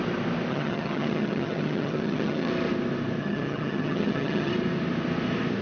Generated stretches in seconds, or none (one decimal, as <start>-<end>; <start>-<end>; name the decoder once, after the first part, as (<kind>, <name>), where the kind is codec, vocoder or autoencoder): 0.5-2.5 (vocoder, HiFi-GAN); 3.2-4.5